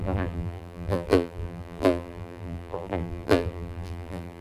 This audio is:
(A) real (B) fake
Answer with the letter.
B